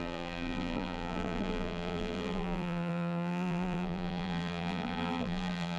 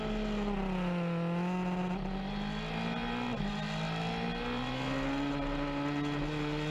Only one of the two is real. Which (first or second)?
second